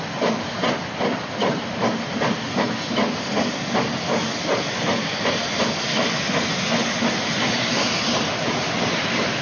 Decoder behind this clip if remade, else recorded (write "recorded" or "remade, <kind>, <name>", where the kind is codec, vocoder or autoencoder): recorded